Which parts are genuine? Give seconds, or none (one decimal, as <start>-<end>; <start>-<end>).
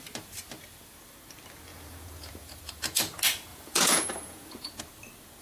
0.0-1.7; 3.0-3.5; 4.8-5.4